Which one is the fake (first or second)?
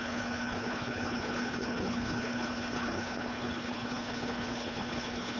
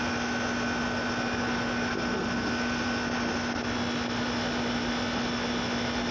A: first